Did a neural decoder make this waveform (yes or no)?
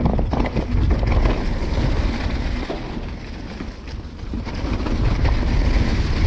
no